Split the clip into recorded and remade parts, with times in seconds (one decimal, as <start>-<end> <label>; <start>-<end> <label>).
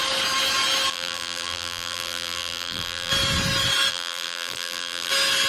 0.0-0.9 recorded; 0.9-3.1 remade; 3.1-3.9 recorded; 3.9-5.1 remade; 5.1-5.5 recorded